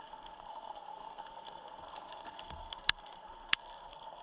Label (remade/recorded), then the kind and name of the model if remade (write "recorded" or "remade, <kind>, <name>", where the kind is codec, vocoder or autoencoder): remade, codec, SNAC